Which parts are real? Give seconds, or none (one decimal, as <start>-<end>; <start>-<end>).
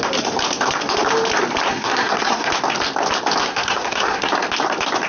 0.0-1.7; 2.5-3.4; 4.3-5.1